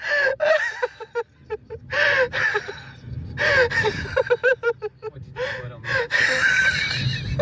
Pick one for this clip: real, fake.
real